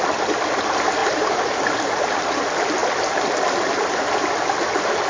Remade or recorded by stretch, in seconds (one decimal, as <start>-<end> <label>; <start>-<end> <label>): 0.0-1.0 recorded; 1.0-1.6 remade; 1.6-5.1 recorded